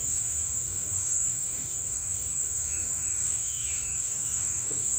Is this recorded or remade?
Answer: remade